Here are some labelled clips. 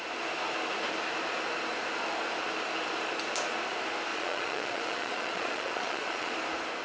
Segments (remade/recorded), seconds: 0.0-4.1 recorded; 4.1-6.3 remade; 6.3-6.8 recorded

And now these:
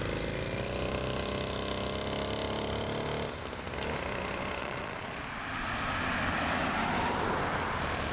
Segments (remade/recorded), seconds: 0.0-4.6 recorded; 4.6-5.2 remade; 5.2-8.1 recorded

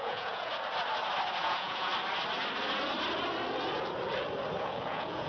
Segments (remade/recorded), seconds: 0.0-0.5 remade; 0.5-1.4 recorded; 1.4-1.9 remade; 1.9-4.6 recorded; 4.6-5.3 remade

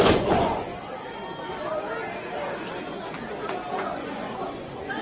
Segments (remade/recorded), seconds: 0.0-0.7 remade; 0.7-3.7 recorded; 3.7-5.0 remade

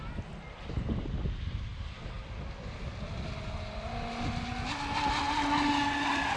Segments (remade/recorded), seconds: 0.0-6.4 recorded